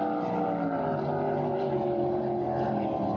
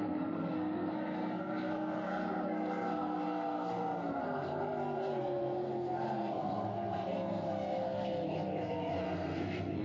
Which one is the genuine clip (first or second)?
first